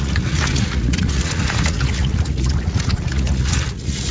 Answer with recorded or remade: remade